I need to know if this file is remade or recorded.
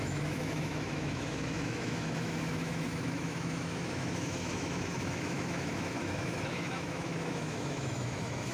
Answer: remade